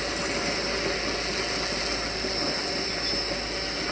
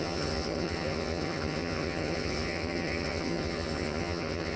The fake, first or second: second